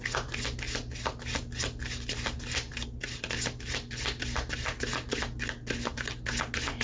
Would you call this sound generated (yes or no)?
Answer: no